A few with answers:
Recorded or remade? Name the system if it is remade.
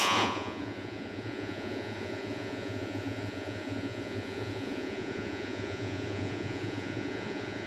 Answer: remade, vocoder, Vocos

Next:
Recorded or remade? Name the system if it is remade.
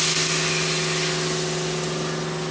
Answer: recorded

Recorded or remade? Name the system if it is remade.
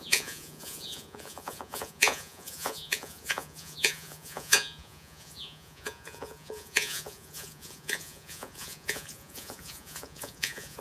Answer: remade, vocoder, Vocos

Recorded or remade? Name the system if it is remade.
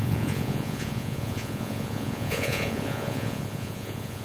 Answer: remade, vocoder, Vocos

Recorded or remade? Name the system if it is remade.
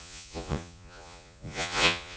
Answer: remade, vocoder, Vocos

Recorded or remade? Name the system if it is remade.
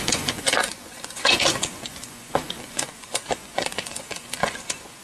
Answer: remade, vocoder, Vocos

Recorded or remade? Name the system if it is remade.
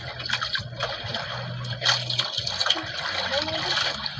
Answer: recorded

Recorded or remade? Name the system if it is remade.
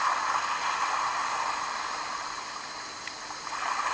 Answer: recorded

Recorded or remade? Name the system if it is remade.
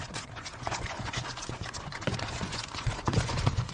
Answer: remade, vocoder, Vocos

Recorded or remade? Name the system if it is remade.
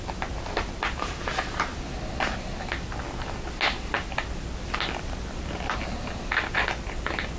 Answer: recorded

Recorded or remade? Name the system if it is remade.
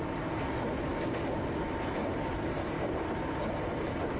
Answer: recorded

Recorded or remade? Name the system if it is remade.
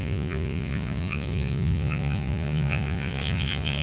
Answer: remade, vocoder, Vocos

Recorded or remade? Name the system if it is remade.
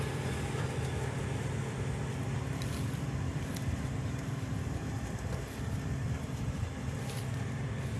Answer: recorded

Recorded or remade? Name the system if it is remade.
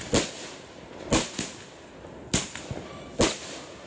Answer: recorded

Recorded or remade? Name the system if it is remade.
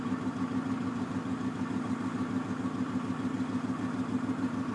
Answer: recorded